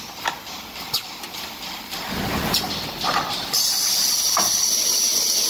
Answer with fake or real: real